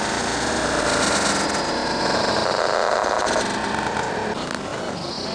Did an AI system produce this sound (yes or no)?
no